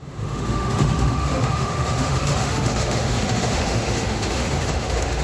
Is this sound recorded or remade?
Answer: remade